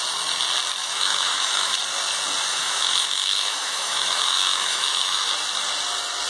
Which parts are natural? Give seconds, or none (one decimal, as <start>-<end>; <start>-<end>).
0.0-0.8; 1.8-2.5; 5.3-6.3